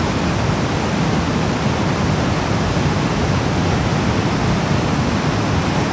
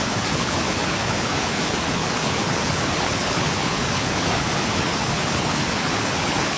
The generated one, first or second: second